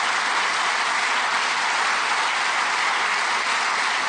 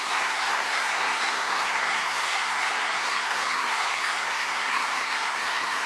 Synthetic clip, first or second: second